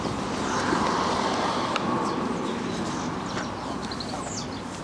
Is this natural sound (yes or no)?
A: yes